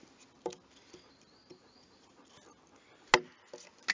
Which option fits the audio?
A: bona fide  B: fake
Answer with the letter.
A